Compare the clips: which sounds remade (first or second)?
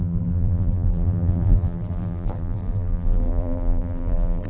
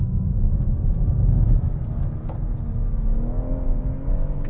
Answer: first